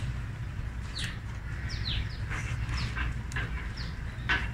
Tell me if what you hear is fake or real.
fake